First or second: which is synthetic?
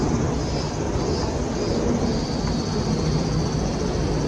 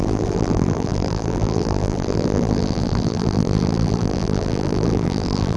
second